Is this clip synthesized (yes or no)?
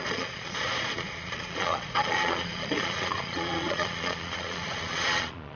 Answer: yes